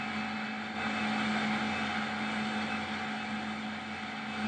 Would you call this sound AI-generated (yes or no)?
no